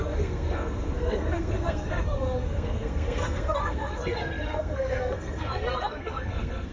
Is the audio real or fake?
fake